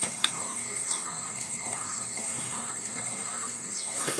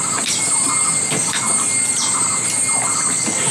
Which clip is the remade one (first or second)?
first